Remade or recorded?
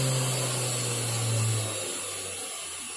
recorded